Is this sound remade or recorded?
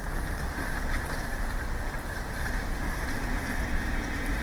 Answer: recorded